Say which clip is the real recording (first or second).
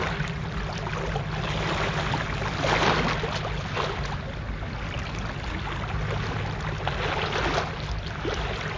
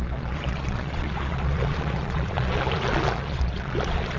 first